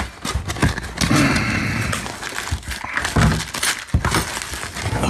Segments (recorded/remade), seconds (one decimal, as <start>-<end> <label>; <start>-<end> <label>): 0.0-5.1 recorded